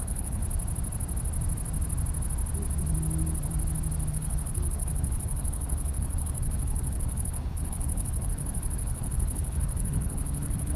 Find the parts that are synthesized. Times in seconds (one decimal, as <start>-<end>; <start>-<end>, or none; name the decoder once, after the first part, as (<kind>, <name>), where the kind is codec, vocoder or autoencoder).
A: 0.0-0.4 (codec, HILCodec); 4.1-10.8